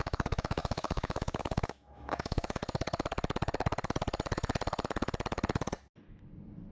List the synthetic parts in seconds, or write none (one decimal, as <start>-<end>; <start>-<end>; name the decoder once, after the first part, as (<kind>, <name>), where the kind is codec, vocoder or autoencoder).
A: 0.0-2.6 (autoencoder, DAC-VAE)